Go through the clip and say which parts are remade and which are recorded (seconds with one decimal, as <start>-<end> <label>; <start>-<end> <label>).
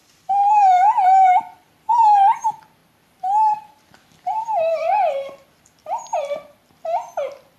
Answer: 0.0-2.4 remade; 2.4-2.8 recorded; 2.8-6.7 remade; 6.7-7.6 recorded